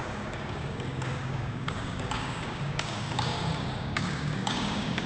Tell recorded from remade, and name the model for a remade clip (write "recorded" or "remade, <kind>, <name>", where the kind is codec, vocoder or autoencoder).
remade, codec, DAC